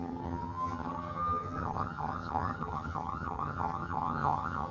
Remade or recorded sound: remade